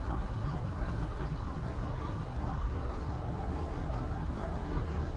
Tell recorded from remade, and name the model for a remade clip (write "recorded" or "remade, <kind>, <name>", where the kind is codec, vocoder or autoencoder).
remade, codec, SNAC